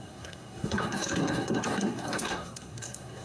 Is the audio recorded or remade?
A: remade